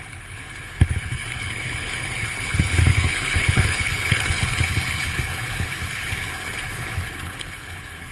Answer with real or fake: fake